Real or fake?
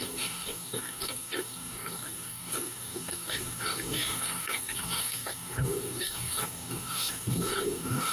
fake